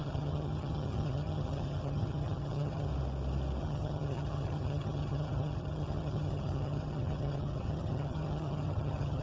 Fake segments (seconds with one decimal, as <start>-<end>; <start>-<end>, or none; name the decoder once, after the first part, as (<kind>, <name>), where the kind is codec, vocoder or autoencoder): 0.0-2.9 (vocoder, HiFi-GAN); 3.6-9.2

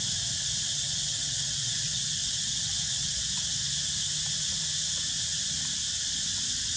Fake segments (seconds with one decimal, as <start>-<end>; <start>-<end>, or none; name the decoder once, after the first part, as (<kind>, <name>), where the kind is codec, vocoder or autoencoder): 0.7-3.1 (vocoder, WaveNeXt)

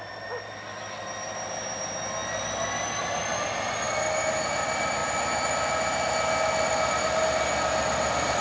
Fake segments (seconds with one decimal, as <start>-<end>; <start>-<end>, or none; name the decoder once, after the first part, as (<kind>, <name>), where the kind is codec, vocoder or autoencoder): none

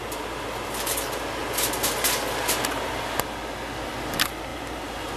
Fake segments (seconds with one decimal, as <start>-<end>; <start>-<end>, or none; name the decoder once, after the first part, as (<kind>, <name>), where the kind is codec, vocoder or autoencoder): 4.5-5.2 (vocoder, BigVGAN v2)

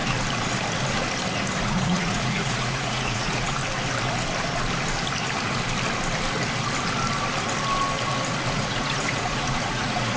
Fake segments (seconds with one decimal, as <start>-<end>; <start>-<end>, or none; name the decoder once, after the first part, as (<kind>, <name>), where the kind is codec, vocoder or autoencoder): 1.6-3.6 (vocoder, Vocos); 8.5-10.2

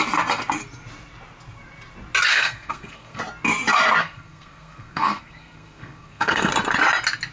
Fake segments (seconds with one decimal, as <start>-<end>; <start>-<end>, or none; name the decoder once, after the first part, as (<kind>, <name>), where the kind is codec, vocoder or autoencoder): 2.3-3.2 (codec, SNAC); 4.0-6.5

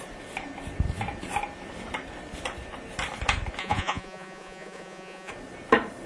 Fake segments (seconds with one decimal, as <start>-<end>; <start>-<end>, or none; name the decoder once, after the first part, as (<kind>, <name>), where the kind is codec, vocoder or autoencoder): 3.6-5.3 (vocoder, Vocos)

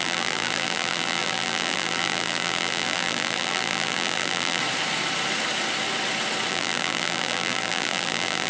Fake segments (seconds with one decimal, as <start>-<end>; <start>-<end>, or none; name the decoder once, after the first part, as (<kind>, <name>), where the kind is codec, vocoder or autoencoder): 0.0-4.6 (vocoder, BigVGAN v2); 6.5-8.5